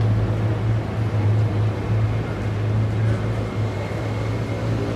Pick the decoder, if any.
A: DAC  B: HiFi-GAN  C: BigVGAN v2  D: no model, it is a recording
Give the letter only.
D